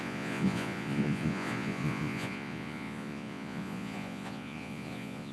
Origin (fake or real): fake